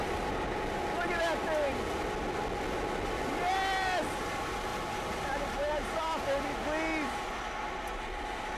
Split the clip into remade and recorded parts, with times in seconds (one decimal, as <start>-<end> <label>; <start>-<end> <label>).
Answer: 0.0-1.0 remade; 1.0-4.7 recorded; 4.7-6.2 remade; 6.2-8.6 recorded